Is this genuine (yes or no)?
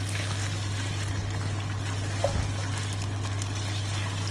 yes